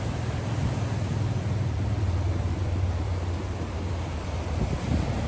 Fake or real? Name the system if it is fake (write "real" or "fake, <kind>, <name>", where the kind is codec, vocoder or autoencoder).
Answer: fake, vocoder, BigVGAN v2